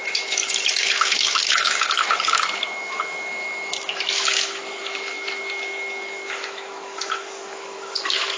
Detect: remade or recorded remade